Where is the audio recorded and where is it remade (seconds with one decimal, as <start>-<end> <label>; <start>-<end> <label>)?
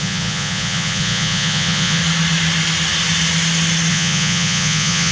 0.0-2.0 remade; 2.0-3.9 recorded; 3.9-5.1 remade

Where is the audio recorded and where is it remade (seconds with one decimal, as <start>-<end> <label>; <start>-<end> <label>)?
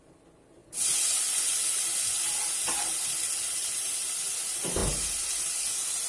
0.0-6.1 recorded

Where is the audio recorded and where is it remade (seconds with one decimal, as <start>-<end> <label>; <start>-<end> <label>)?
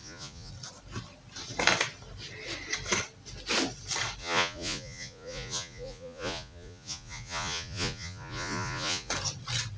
0.0-0.5 remade; 0.5-4.2 recorded; 4.2-9.1 remade; 9.1-9.8 recorded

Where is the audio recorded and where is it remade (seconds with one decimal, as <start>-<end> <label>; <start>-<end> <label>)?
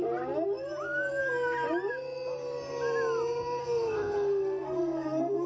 0.0-3.6 recorded; 3.6-5.5 remade